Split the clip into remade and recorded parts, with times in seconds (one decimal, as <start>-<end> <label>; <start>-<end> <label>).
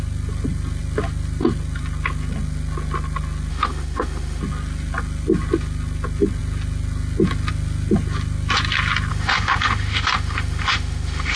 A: 0.0-3.5 recorded; 3.5-4.4 remade; 4.4-9.1 recorded; 9.1-11.4 remade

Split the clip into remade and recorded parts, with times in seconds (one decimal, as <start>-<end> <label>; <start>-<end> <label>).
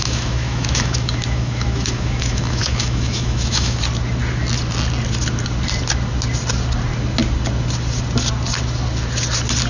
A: 0.0-3.8 remade; 3.8-9.7 recorded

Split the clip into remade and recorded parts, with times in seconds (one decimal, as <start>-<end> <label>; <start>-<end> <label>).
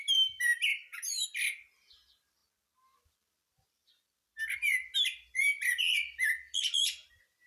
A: 0.0-7.5 recorded